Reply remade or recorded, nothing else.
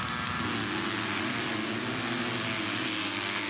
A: recorded